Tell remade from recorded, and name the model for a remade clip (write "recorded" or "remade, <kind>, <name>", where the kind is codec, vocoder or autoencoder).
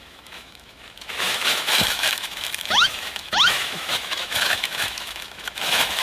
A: remade, autoencoder, DAC-VAE